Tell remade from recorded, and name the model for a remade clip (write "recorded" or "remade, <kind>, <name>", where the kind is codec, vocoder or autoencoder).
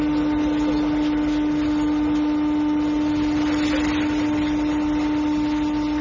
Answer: recorded